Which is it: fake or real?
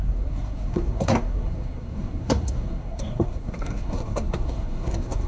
fake